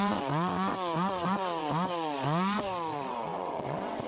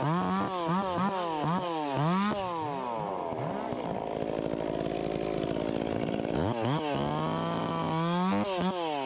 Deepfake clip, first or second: first